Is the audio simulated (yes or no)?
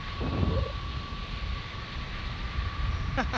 no